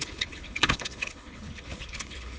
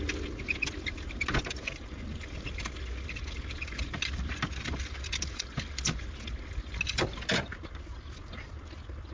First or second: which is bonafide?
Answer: second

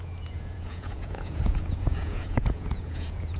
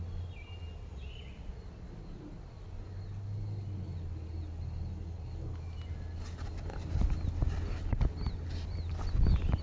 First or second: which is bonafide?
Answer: second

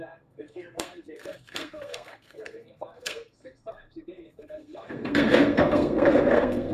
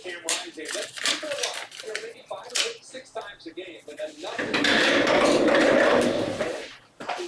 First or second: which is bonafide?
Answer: second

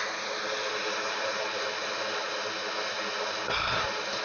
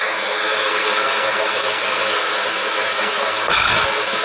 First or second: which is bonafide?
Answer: first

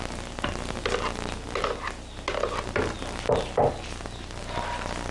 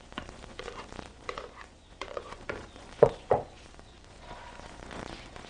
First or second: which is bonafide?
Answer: first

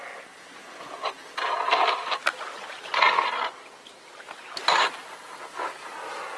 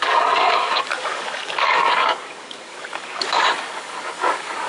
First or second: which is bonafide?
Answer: first